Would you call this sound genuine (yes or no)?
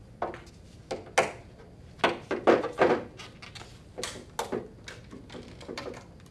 yes